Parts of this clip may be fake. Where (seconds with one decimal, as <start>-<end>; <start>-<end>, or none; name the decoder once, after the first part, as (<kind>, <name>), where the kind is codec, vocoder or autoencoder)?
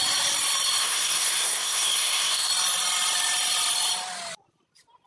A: 0.8-2.5 (codec, SNAC)